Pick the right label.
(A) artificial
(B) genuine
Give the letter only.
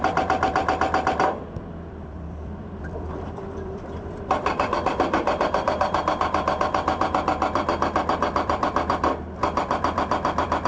A